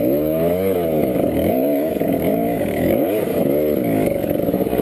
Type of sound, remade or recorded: remade